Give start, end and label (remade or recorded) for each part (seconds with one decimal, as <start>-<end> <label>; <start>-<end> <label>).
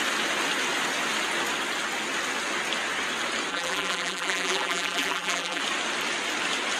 0.0-3.5 recorded; 3.5-5.6 remade; 5.6-6.8 recorded